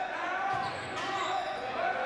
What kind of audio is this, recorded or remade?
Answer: remade